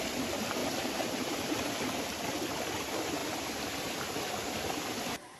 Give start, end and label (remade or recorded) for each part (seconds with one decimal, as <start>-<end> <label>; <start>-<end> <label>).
0.0-0.6 recorded; 0.6-1.7 remade; 1.7-3.2 recorded; 3.2-3.7 remade; 3.7-5.4 recorded